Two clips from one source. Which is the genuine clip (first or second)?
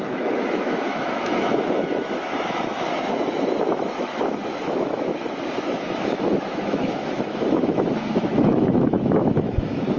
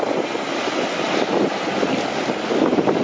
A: second